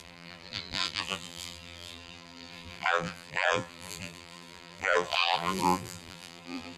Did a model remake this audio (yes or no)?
yes